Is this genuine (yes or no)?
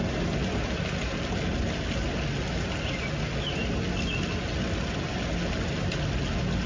yes